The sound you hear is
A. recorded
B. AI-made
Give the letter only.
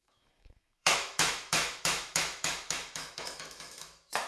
B